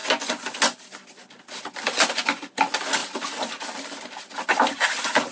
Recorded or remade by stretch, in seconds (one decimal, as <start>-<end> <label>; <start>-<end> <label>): 0.0-5.3 recorded